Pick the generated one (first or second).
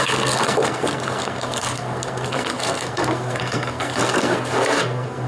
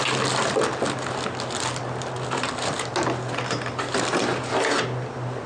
first